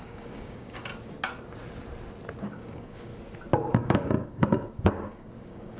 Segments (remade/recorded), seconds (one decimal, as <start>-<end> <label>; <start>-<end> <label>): 0.0-0.9 remade; 0.9-2.4 recorded; 2.4-3.1 remade; 3.1-3.8 recorded; 3.8-5.8 remade